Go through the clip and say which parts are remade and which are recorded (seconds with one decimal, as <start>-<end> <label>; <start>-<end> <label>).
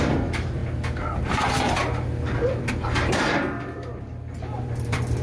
0.0-0.6 remade; 0.6-2.7 recorded; 2.7-5.2 remade